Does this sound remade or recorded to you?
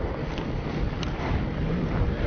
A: recorded